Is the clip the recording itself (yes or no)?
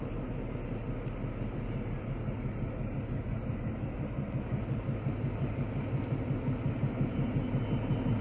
yes